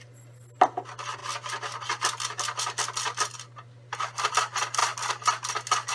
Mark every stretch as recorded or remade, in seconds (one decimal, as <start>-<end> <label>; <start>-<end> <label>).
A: 0.0-5.9 recorded